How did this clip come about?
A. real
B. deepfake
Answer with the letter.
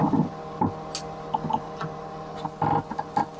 A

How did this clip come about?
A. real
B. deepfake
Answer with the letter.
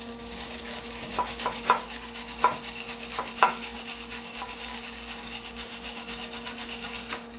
B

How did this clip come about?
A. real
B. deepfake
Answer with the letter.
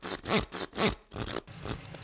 A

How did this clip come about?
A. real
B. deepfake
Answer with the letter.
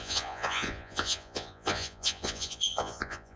B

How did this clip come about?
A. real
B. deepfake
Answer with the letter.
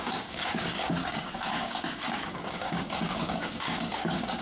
B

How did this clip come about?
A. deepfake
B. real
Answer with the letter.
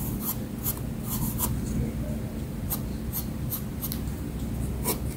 B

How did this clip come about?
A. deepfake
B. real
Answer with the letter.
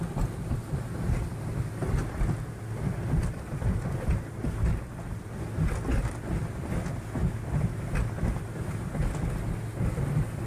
B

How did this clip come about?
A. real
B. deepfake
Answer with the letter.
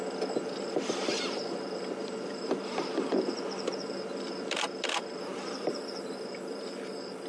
B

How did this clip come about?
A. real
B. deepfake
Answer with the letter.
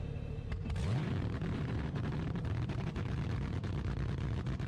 B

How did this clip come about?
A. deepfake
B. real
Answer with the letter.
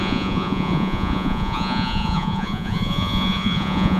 A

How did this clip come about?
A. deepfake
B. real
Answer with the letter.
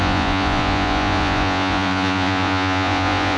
A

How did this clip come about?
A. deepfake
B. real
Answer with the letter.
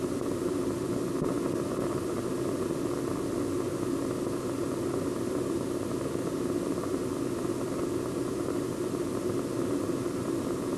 B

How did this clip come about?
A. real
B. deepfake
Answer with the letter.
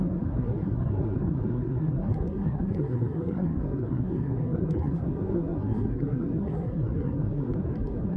B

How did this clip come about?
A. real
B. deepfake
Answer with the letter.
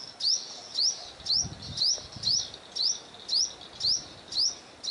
A